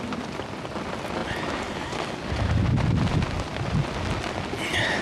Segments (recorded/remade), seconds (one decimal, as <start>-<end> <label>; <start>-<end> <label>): 0.0-5.0 recorded